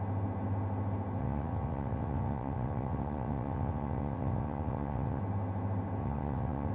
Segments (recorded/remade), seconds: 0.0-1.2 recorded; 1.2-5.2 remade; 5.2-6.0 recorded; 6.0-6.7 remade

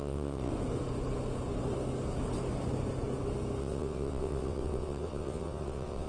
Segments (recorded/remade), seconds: 0.0-0.5 remade; 0.5-3.6 recorded; 3.6-6.1 remade